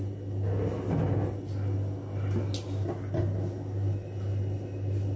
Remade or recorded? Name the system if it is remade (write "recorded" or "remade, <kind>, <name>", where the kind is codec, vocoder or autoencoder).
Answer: recorded